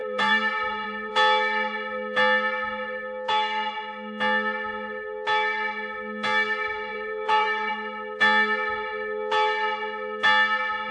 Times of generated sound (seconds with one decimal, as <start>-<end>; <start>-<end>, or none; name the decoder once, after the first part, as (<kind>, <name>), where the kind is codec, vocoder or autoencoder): 0.0-1.1 (vocoder, BigVGAN v2); 6.9-7.7